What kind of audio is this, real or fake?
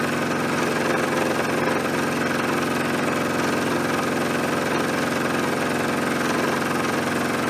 real